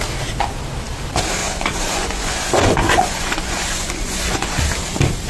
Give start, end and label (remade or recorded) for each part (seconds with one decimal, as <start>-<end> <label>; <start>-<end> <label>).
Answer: 0.0-1.4 recorded; 1.4-4.6 remade; 4.6-5.3 recorded